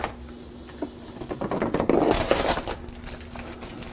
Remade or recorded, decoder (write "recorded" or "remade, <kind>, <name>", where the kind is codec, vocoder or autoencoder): recorded